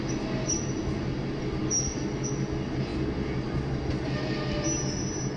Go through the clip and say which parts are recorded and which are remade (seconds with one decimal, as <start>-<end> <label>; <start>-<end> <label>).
0.0-5.4 recorded